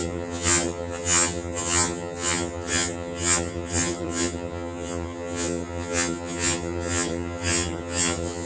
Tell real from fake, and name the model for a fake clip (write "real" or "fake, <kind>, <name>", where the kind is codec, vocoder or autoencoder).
fake, vocoder, HiFi-GAN